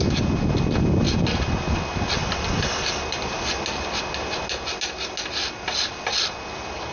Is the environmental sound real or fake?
real